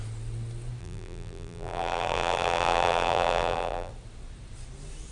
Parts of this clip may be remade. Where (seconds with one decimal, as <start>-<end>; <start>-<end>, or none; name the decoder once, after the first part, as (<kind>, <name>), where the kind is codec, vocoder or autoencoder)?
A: 0.8-3.9 (vocoder, BigVGAN v2)